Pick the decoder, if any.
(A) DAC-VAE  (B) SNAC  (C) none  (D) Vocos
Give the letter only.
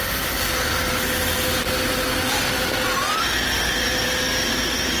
C